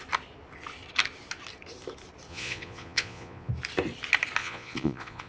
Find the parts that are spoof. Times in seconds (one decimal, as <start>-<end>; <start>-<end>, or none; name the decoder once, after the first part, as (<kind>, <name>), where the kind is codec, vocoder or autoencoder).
2.3-3.5 (vocoder, Vocos); 4.4-5.3